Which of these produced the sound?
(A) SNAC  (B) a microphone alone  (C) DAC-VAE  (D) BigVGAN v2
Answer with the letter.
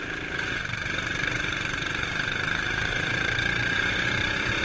D